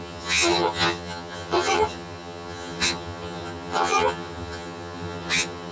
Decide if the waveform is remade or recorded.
remade